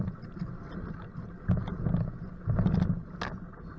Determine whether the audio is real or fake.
real